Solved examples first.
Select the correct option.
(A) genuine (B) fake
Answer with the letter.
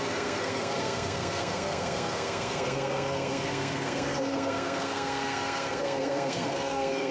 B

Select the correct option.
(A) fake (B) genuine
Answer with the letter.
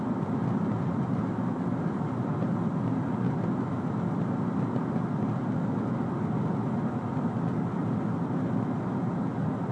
B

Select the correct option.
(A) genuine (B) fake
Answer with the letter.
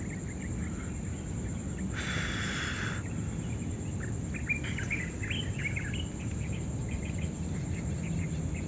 A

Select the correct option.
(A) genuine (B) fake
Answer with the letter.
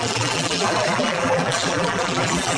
B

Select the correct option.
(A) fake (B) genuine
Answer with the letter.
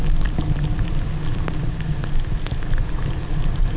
B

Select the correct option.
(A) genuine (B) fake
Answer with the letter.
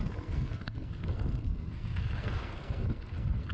B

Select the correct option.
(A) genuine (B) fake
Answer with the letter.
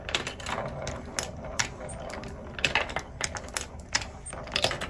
A